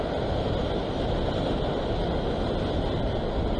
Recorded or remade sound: recorded